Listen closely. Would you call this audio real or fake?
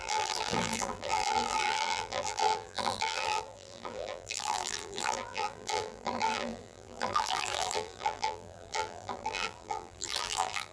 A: fake